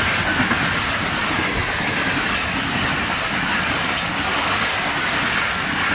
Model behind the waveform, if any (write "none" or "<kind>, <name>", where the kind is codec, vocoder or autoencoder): none